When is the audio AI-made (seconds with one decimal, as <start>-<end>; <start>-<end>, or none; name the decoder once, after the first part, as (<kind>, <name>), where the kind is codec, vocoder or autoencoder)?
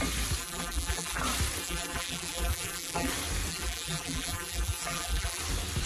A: 0.4-1.2 (vocoder, BigVGAN v2); 1.6-3.1; 3.5-5.4